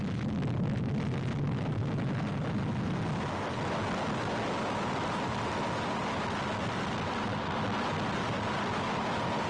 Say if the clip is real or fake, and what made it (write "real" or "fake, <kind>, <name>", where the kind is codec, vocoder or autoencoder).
real